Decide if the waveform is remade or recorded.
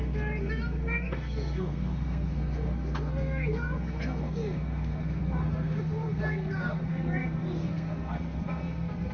remade